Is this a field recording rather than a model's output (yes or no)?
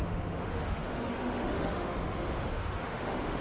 no